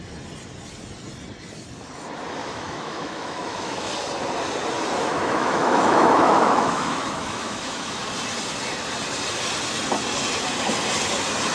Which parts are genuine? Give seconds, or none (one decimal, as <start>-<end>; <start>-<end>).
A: 0.0-2.4; 3.9-5.0; 8.0-11.5